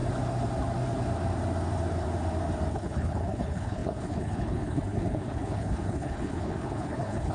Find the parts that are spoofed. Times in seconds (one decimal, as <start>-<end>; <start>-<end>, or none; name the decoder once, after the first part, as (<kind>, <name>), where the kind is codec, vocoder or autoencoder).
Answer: 2.7-7.3 (codec, HILCodec)